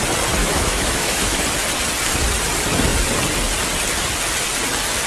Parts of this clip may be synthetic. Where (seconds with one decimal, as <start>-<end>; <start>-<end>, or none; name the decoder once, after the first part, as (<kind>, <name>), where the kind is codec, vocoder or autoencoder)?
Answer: 0.4-1.4 (autoencoder, DAC-VAE)